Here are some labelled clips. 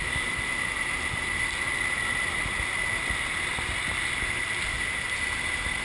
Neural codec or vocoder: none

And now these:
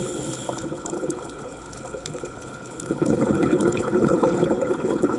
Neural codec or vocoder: codec, HILCodec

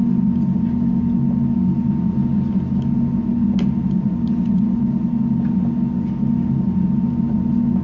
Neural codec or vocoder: none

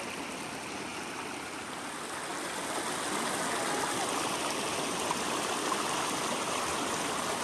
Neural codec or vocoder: none